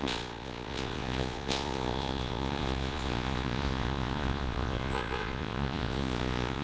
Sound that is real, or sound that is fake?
fake